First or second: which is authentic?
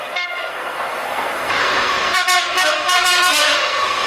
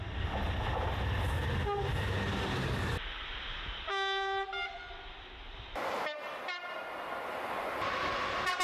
second